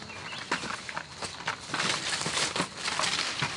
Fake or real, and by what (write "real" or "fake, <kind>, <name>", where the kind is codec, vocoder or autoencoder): real